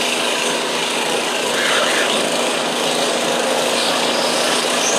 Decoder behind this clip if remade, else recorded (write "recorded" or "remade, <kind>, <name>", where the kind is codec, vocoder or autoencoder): remade, codec, DAC